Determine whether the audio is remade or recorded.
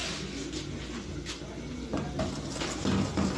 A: recorded